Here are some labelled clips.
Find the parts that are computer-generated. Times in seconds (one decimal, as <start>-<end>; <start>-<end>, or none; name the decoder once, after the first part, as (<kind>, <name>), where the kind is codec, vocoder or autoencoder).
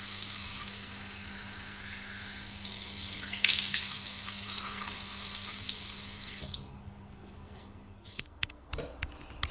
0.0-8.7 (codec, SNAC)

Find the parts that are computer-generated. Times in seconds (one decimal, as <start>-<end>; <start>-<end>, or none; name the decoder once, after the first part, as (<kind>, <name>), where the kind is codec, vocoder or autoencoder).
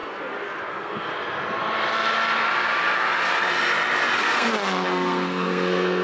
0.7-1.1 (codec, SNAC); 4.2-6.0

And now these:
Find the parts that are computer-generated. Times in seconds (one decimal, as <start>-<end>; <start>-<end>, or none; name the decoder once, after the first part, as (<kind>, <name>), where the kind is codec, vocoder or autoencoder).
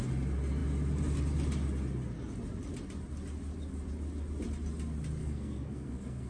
5.2-6.3 (codec, SNAC)